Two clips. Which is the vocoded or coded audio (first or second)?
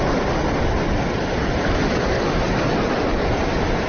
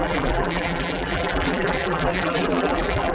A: second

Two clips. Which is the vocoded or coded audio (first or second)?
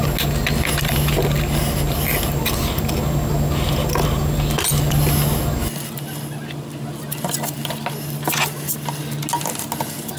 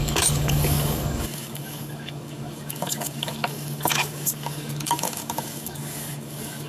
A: second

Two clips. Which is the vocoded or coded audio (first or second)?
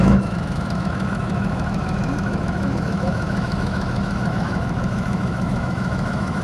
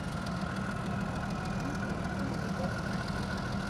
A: first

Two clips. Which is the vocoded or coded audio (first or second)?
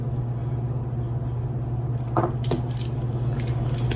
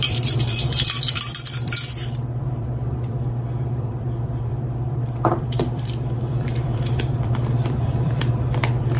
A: second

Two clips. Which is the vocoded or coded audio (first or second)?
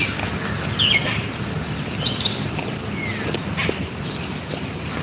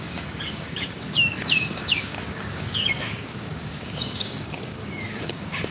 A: second